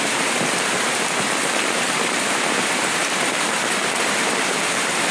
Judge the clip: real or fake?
fake